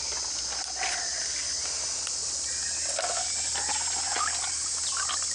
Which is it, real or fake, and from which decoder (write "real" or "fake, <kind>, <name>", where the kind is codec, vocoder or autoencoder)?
real